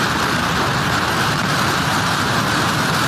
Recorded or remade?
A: remade